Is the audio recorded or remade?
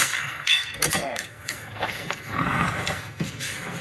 remade